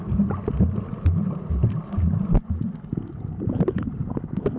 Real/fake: real